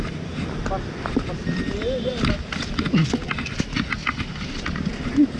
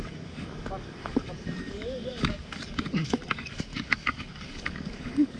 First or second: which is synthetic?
second